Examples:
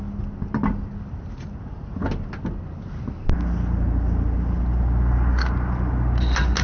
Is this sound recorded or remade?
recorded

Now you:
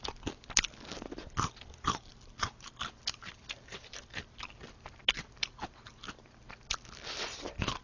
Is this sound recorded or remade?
recorded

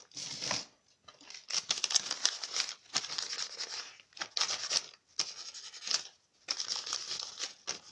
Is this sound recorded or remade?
recorded